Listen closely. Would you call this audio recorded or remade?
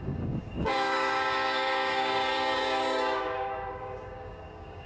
remade